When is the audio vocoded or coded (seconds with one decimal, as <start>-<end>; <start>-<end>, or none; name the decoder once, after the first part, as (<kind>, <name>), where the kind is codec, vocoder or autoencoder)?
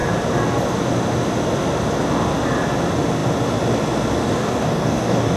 4.2-5.4 (codec, DAC)